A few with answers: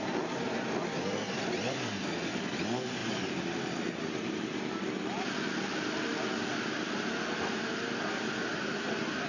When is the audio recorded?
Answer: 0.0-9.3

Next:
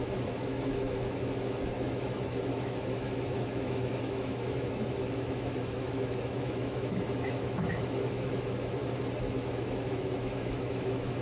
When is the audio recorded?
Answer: 8.8-9.3

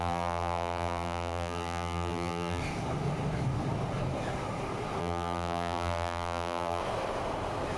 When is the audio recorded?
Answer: 2.6-5.0; 6.8-7.8